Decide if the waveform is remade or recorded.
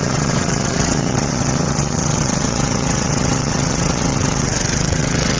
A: remade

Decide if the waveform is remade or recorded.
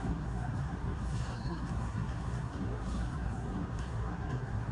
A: remade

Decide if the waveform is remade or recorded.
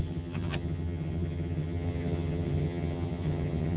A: remade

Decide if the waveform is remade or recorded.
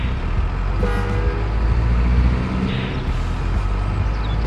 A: recorded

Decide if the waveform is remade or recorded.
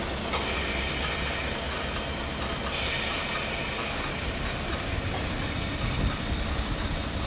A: recorded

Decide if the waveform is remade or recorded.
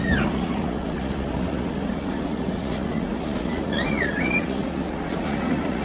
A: remade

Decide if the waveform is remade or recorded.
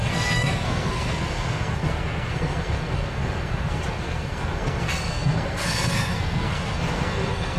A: remade